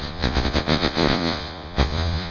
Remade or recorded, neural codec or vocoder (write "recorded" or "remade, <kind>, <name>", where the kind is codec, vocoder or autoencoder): remade, vocoder, Vocos